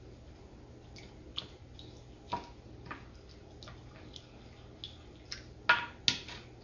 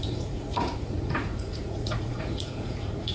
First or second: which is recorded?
first